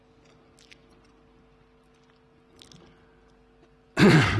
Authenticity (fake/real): real